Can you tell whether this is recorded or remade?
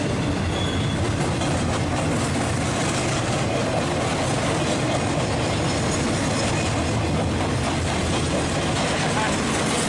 recorded